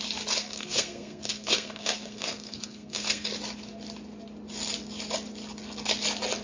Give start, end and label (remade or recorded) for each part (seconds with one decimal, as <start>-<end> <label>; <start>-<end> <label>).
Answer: 0.0-0.4 recorded; 0.4-3.3 remade; 3.3-6.4 recorded